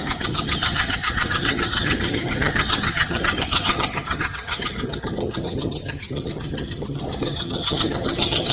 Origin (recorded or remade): remade